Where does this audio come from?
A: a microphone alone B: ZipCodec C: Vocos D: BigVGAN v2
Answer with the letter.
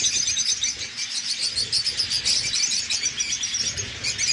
A